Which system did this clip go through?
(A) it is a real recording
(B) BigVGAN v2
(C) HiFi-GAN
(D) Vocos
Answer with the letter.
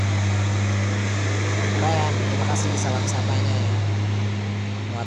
A